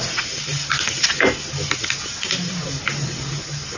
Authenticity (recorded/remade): recorded